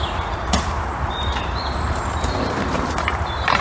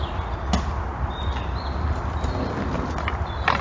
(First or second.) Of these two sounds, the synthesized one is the first